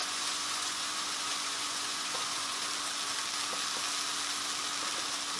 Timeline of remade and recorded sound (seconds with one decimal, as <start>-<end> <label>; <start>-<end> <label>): 0.0-2.7 remade; 2.7-5.4 recorded